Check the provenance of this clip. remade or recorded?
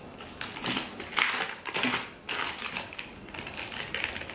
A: recorded